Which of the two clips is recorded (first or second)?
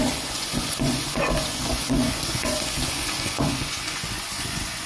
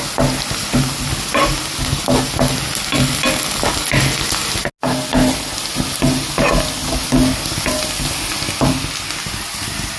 second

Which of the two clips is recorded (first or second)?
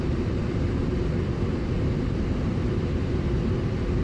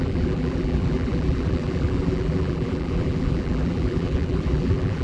first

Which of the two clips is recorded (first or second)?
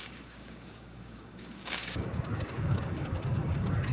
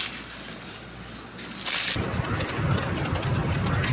second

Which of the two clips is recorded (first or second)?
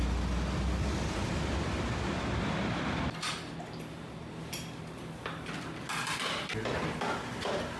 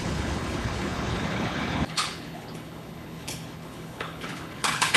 first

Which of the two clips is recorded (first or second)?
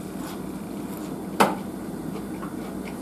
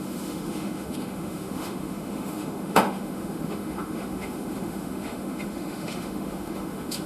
first